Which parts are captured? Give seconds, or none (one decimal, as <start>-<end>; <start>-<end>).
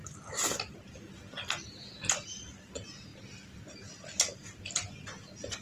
0.0-5.6